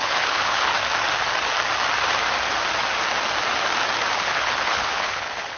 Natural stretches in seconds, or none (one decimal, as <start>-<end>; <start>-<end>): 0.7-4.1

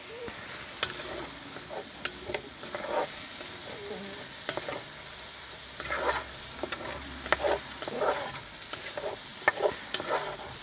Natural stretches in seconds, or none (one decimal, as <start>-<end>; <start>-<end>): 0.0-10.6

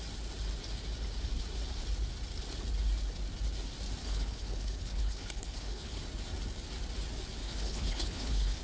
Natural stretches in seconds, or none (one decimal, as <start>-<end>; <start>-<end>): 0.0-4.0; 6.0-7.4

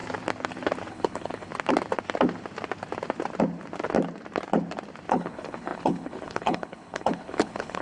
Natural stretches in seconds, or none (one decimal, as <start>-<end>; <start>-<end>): 0.0-0.9; 1.5-5.1

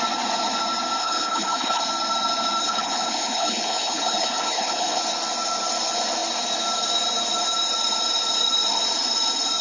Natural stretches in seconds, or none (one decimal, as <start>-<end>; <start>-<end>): 0.0-1.0; 1.8-2.6; 5.0-9.6

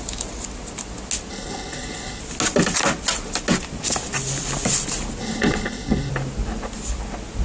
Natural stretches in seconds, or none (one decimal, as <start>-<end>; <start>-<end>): 0.0-1.3; 2.2-5.2; 6.1-7.4

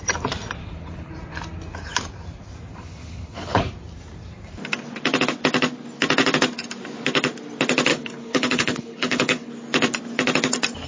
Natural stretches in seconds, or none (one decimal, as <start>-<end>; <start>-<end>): 0.0-0.6; 1.1-2.7; 3.7-7.9; 9.5-10.9